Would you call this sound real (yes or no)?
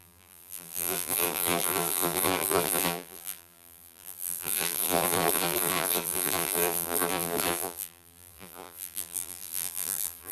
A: no